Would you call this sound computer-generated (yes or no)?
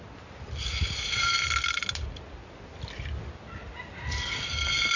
no